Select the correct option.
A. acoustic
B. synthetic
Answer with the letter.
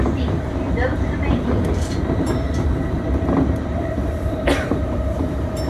B